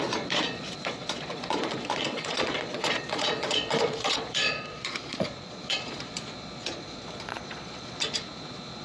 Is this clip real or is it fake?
fake